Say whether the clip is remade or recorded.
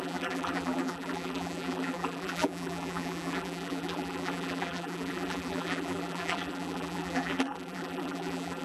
remade